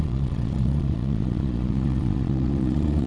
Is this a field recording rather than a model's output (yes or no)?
no